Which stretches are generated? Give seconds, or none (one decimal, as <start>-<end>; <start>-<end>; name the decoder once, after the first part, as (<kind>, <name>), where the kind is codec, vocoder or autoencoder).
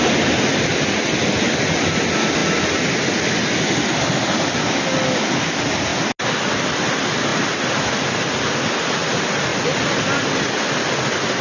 9.5-10.4 (vocoder, BigVGAN v2)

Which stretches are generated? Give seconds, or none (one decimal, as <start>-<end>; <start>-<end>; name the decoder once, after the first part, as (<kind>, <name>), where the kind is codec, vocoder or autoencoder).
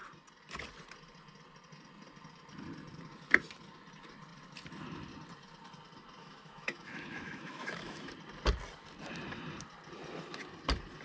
6.2-8.1 (autoencoder, DAC-VAE)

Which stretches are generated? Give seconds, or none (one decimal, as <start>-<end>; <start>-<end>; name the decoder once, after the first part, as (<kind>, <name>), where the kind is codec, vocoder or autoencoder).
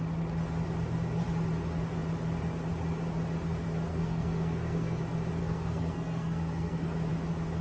3.9-5.0 (codec, SNAC); 5.4-7.1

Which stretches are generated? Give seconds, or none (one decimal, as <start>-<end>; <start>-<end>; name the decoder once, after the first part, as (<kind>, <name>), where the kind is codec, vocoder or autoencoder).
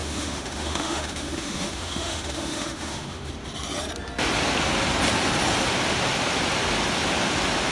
0.0-3.3 (autoencoder, DAC-VAE)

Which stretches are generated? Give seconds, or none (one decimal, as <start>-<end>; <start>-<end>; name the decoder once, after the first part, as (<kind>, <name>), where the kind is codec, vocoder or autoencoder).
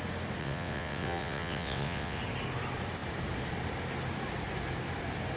0.4-2.2 (vocoder, WaveNeXt)